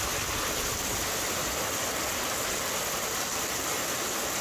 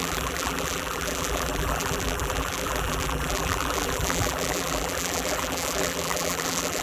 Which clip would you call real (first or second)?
first